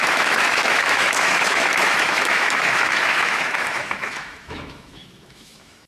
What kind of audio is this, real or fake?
fake